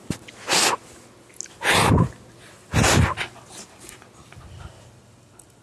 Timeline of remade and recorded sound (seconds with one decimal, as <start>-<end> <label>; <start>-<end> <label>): 0.0-5.6 recorded